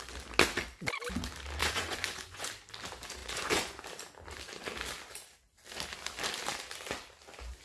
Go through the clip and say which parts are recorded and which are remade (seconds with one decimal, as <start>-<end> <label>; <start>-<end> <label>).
0.0-1.6 recorded; 1.6-2.5 remade; 2.5-3.2 recorded; 3.2-3.8 remade; 3.8-7.6 recorded